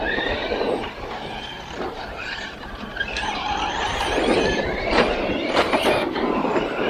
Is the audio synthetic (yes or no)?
yes